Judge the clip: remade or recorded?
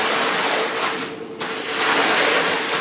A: recorded